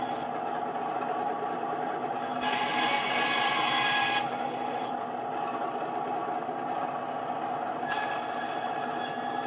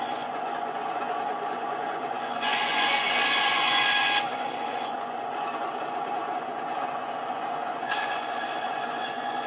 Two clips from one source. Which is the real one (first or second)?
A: first